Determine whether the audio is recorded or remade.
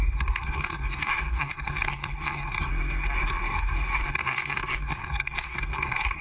remade